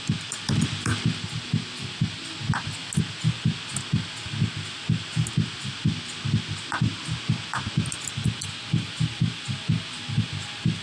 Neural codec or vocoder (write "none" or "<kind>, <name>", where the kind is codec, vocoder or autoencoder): none